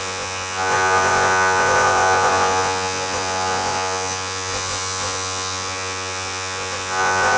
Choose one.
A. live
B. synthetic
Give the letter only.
B